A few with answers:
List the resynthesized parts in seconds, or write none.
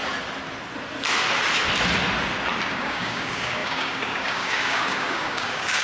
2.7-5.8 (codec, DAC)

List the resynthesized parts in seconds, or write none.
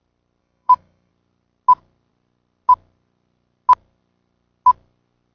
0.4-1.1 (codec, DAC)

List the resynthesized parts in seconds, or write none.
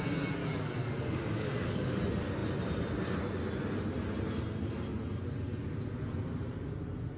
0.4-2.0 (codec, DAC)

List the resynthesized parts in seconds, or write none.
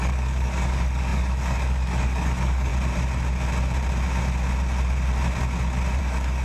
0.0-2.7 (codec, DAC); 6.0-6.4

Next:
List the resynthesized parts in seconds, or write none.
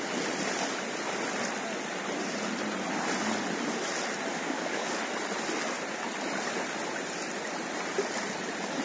4.3-5.0 (codec, DAC)